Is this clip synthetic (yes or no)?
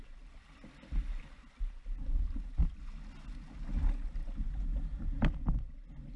no